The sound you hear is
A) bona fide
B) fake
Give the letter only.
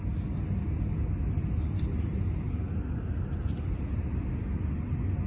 A